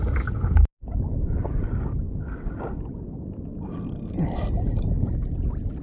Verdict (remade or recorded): recorded